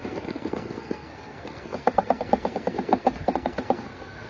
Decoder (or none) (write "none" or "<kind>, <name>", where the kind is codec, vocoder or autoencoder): codec, SNAC